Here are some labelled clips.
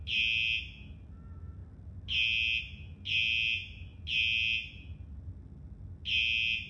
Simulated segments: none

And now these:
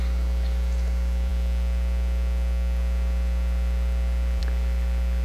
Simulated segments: none

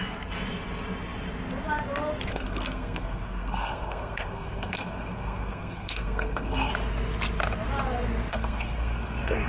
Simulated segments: 2.3-6.7 (codec, SNAC); 8.3-9.5

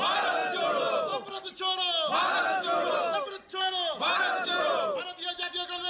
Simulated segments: none

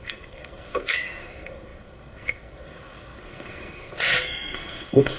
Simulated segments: 0.0-5.2 (codec, SNAC)

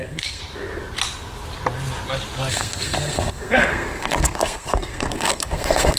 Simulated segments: 0.0-0.4 (codec, SNAC); 2.5-6.0

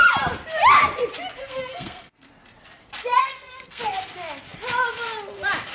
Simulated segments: 1.4-2.3 (codec, SNAC); 3.2-3.8